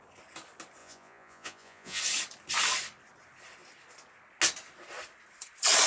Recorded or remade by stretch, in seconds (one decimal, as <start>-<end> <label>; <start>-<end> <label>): 0.0-0.8 recorded; 0.8-2.0 remade; 2.0-5.9 recorded